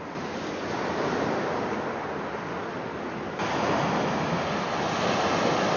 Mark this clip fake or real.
real